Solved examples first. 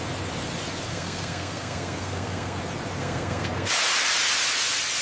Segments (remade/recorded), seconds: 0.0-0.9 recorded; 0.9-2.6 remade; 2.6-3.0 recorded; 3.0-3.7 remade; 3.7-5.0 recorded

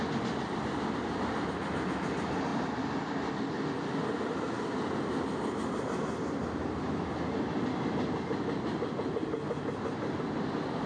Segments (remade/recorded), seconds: 0.0-10.9 recorded

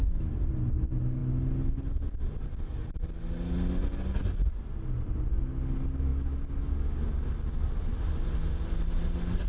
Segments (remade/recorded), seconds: 0.0-9.5 recorded